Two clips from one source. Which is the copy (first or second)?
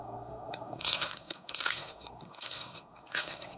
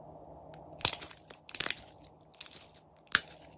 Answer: first